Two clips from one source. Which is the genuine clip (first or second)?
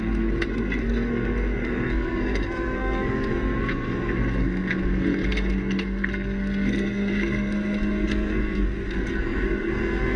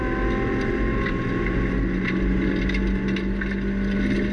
second